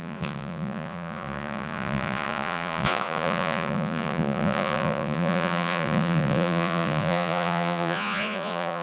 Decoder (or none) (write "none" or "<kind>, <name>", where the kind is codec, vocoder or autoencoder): vocoder, Vocos